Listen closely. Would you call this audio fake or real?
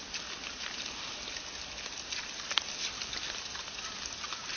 real